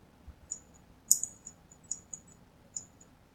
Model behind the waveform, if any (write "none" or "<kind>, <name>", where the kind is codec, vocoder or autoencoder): none